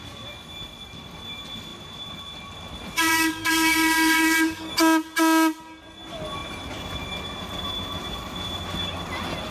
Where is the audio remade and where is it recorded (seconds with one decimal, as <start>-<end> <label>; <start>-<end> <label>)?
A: 0.0-3.1 recorded; 3.1-4.7 remade; 4.7-9.5 recorded